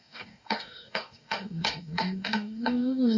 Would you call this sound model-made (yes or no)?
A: yes